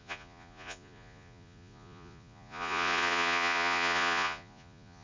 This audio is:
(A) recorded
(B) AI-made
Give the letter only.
B